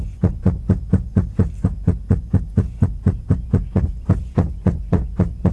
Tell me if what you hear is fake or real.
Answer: fake